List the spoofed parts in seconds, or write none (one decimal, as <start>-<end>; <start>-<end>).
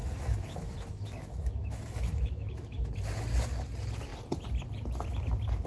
0.0-2.9